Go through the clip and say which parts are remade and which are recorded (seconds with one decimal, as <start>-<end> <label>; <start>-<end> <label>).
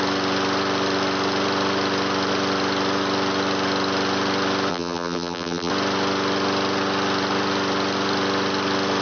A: 0.0-4.7 recorded; 4.7-5.7 remade; 5.7-9.0 recorded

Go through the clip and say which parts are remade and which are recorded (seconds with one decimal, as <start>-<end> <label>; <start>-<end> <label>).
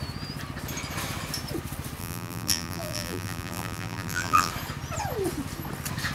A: 0.0-2.0 recorded; 2.0-4.5 remade; 4.5-6.1 recorded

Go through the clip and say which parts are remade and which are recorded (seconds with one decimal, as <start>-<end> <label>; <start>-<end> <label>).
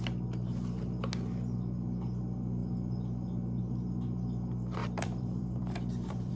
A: 0.0-4.8 recorded; 4.8-6.3 remade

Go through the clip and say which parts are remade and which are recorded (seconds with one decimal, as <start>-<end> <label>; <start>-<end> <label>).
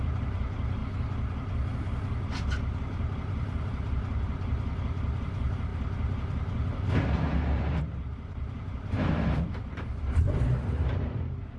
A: 0.0-0.8 remade; 0.8-2.6 recorded; 2.6-11.6 remade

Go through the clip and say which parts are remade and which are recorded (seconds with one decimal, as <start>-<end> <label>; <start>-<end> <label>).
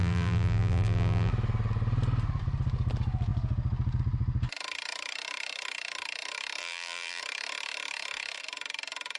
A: 0.0-1.3 remade; 1.3-6.6 recorded; 6.6-7.2 remade; 7.2-9.2 recorded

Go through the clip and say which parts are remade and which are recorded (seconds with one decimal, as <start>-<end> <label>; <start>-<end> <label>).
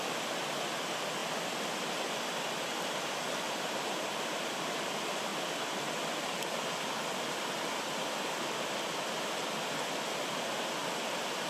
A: 0.0-11.5 recorded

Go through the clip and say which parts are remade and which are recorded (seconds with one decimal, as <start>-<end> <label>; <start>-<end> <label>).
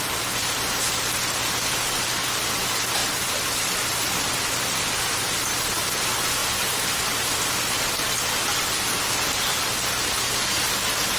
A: 0.0-6.4 recorded; 6.4-7.7 remade; 7.7-11.2 recorded